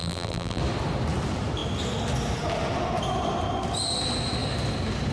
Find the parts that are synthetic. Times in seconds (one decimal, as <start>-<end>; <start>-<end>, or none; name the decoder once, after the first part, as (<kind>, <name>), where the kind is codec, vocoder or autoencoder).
0.0-0.6 (vocoder, BigVGAN v2)

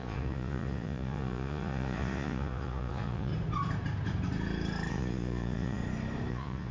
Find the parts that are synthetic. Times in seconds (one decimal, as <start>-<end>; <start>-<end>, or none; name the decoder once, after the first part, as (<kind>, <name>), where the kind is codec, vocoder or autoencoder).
0.0-3.3 (vocoder, Vocos); 4.9-5.8; 6.3-6.7

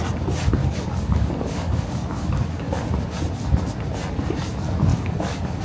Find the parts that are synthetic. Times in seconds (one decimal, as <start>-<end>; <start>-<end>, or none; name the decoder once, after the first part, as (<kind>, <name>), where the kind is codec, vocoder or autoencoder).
0.6-2.7 (codec, DAC); 4.9-5.6

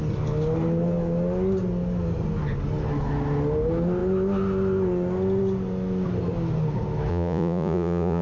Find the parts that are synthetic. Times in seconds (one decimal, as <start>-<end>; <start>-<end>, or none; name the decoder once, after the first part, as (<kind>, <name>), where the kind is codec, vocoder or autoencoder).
7.1-8.2 (vocoder, Vocos)

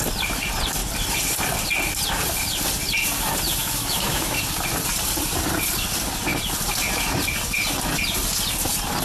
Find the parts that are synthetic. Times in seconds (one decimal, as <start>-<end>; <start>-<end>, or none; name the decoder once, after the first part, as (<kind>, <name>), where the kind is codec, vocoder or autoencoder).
3.6-4.4 (autoencoder, DAC-VAE)